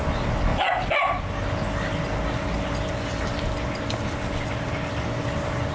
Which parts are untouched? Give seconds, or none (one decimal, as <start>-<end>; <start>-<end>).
0.0-5.7